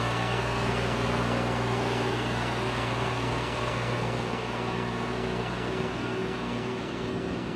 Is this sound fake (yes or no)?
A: yes